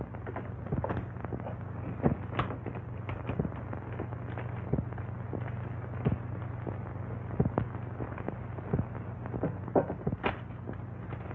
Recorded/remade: recorded